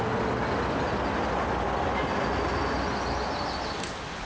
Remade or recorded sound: recorded